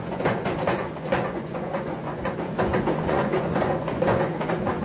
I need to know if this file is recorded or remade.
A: remade